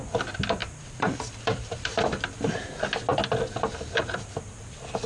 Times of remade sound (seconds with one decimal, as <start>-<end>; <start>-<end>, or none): 0.6-1.9; 3.1-4.0